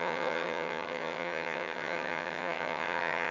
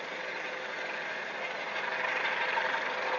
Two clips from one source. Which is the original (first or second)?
second